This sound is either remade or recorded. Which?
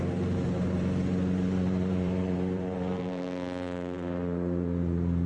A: remade